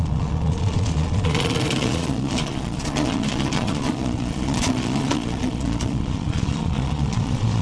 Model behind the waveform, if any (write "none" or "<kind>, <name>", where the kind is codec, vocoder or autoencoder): vocoder, Vocos